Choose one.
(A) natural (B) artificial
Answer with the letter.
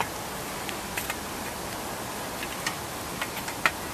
A